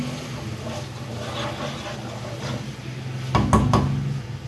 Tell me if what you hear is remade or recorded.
recorded